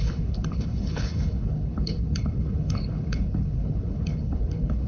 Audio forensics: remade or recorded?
remade